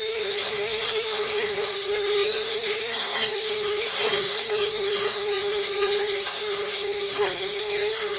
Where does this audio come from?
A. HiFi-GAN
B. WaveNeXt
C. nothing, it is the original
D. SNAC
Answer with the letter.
D